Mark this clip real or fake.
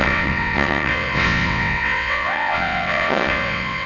fake